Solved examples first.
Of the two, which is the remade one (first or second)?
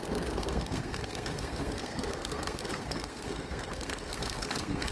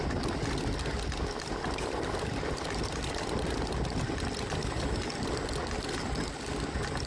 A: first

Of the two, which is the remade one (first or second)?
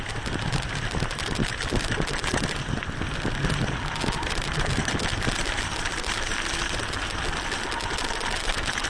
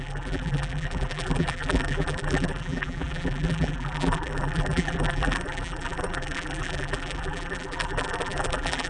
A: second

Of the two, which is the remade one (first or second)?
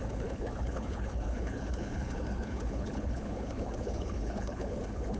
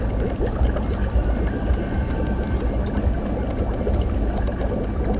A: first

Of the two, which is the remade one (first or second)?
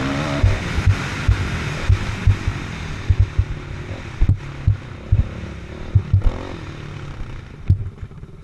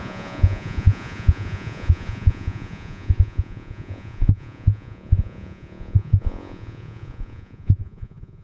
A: second